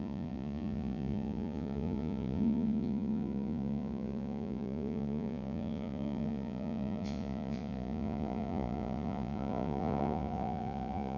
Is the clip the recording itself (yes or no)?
no